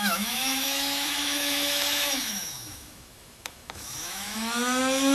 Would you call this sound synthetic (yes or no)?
yes